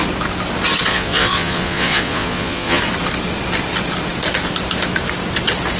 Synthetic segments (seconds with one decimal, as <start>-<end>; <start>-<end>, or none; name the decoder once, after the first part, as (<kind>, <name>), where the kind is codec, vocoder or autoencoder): 0.9-2.8 (vocoder, Vocos)